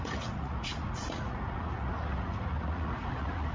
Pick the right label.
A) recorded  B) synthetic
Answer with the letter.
B